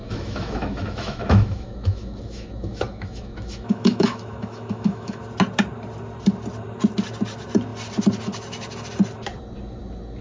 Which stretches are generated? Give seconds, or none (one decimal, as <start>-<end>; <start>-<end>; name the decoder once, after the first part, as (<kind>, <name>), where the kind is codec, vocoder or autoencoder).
0.0-5.2 (autoencoder, DAC-VAE)